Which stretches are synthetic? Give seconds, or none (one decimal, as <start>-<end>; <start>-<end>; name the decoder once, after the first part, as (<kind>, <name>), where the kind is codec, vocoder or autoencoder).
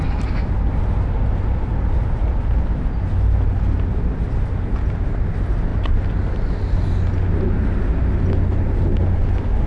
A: none